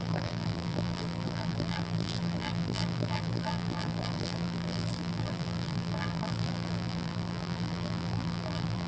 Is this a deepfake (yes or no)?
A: yes